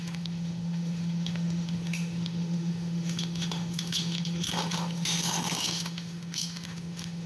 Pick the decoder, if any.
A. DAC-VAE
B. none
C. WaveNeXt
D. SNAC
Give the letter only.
A